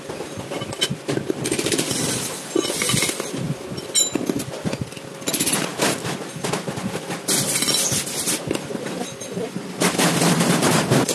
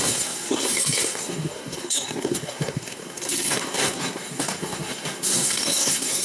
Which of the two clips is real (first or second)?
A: first